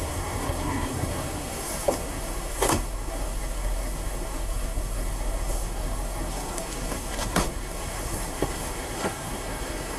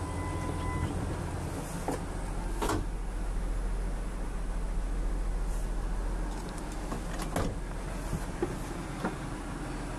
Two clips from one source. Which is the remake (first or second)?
first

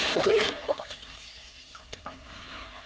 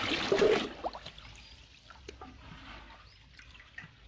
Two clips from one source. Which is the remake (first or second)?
first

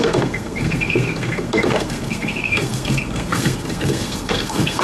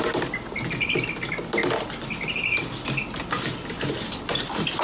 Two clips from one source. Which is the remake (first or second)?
first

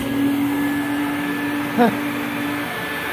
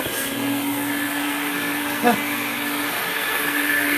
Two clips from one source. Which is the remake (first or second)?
second